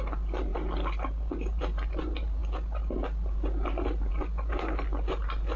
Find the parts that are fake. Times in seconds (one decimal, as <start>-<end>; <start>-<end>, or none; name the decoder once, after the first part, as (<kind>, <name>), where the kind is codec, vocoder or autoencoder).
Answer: none